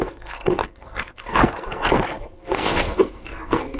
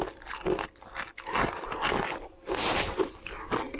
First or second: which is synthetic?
first